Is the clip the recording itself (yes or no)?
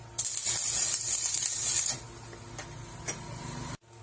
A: yes